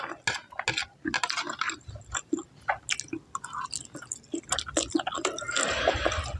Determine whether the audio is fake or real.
real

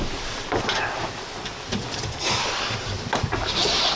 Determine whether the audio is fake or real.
real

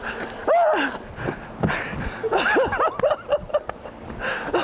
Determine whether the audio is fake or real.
real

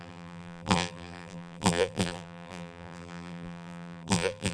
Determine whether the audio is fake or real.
fake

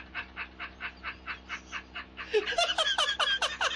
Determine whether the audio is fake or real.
real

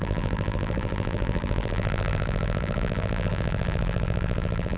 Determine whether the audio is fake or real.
fake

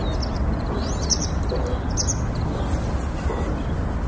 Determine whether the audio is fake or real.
real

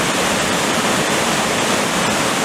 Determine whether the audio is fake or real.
fake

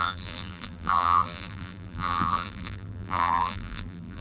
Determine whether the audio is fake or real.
fake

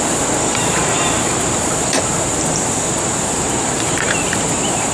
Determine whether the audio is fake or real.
fake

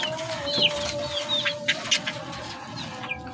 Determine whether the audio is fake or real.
real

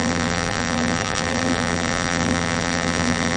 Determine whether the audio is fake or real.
fake